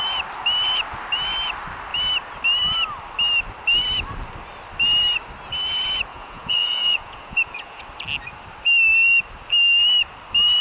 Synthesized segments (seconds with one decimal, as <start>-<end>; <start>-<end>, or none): 6.1-7.8